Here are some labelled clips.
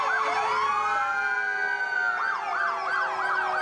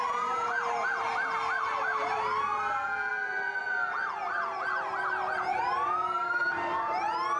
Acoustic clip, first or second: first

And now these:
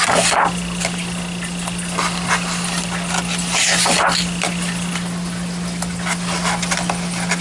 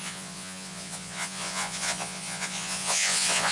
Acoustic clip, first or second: first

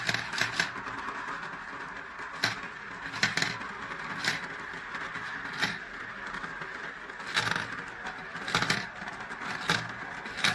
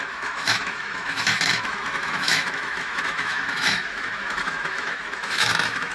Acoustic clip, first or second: first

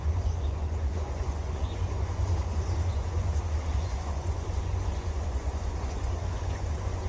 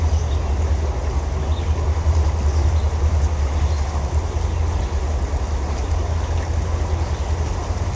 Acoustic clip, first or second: second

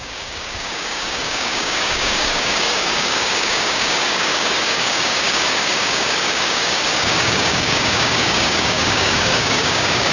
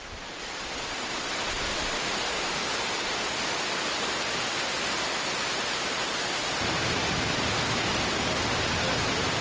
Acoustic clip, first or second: second